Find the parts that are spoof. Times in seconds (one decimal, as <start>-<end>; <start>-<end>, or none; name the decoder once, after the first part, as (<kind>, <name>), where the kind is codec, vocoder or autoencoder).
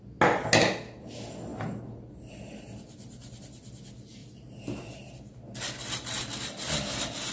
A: 1.5-3.4 (vocoder, BigVGAN v2)